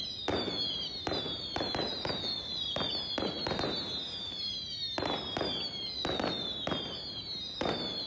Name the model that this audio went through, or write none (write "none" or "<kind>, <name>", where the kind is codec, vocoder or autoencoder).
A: none